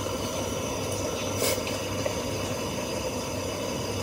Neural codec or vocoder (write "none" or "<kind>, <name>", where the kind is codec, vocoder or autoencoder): none